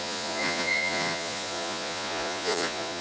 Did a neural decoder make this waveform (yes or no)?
yes